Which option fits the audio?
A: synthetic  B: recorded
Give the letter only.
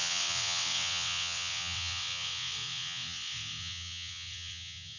A